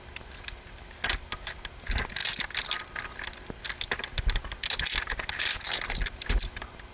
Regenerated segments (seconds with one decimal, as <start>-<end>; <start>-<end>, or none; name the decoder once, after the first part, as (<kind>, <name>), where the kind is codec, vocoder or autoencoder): none

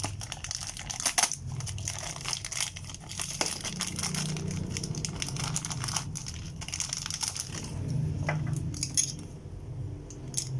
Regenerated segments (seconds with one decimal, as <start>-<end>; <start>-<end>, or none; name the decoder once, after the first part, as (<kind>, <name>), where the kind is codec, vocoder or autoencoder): none

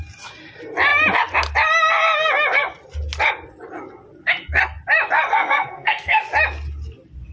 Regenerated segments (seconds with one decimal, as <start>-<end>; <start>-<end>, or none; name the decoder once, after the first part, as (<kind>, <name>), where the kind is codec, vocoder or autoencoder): 5.3-6.2 (codec, SNAC)

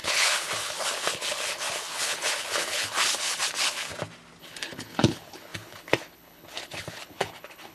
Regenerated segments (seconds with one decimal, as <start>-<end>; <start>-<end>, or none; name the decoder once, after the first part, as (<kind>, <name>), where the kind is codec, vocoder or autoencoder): 0.0-3.9 (codec, HILCodec); 4.4-7.7

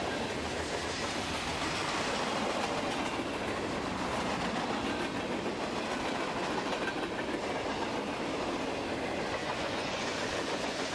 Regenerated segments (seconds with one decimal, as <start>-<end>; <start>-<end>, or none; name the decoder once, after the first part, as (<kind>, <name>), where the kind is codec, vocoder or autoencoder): 9.4-10.9 (vocoder, Vocos)